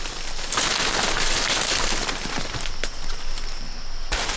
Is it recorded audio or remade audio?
recorded